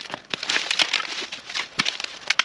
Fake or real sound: fake